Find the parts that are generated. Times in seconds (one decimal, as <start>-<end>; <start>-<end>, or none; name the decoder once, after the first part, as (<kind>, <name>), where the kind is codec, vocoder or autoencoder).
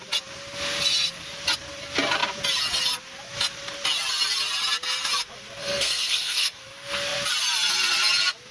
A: 5.6-6.6 (codec, SNAC)